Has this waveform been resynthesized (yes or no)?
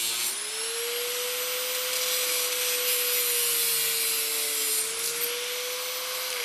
no